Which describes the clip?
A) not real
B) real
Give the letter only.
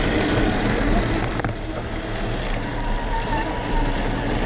B